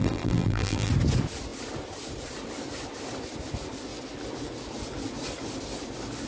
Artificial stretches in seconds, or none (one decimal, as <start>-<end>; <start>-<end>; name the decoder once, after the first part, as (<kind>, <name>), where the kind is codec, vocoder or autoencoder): 0.0-0.9 (vocoder, BigVGAN v2)